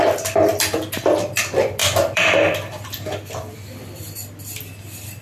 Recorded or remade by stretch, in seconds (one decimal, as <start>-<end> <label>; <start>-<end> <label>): 0.0-0.5 recorded; 0.5-1.4 remade; 1.4-1.8 recorded; 1.8-5.2 remade